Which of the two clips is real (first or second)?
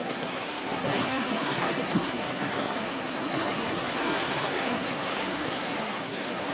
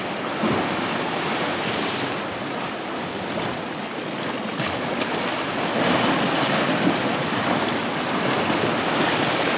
second